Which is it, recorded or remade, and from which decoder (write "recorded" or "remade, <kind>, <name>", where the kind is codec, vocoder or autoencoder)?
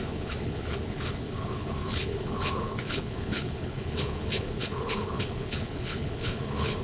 remade, codec, HILCodec